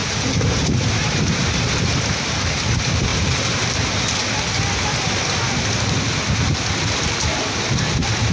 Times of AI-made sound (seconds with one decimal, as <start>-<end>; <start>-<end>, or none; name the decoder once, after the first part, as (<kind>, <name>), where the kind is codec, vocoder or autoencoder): 0.0-2.3 (vocoder, BigVGAN v2)

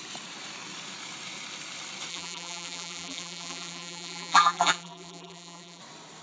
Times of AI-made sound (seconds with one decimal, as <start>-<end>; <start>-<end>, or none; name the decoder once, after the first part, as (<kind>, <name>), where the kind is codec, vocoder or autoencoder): 2.1-5.8 (vocoder, BigVGAN v2)

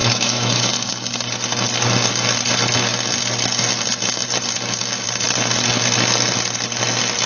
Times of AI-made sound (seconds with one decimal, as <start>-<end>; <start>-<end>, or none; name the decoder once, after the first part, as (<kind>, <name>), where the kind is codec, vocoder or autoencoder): 0.0-0.7 (autoencoder, DAC-VAE)

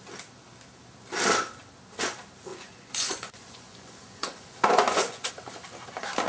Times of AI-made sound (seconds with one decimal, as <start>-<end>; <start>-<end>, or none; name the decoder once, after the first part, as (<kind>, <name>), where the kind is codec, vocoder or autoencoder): 2.5-5.3 (vocoder, Vocos)

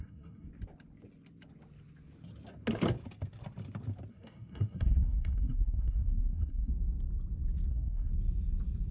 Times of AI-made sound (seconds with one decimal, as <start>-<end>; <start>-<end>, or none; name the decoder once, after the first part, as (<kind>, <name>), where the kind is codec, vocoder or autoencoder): 0.0-0.5 (codec, SNAC); 4.1-6.7; 7.7-8.1